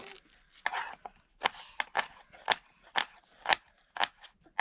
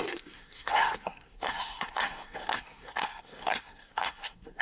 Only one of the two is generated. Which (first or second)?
second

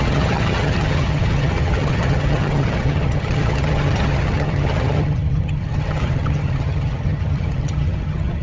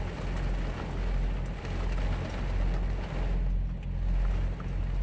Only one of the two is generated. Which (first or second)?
first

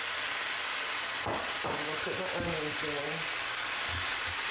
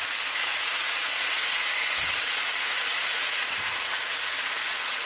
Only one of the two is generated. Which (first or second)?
second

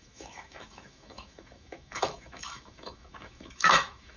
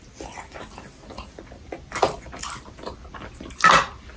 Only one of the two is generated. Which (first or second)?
first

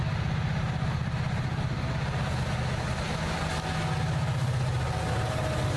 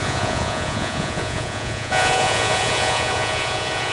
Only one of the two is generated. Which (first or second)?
second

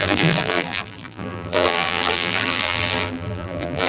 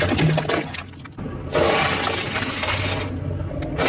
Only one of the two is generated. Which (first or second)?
first